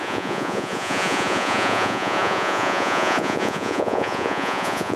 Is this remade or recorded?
remade